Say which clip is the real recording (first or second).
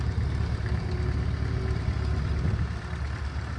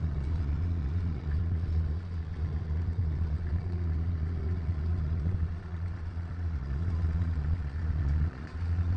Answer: first